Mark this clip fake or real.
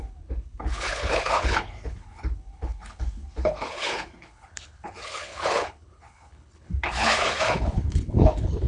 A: fake